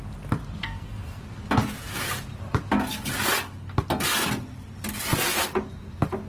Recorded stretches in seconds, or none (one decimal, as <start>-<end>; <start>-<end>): 0.0-0.6; 1.2-6.3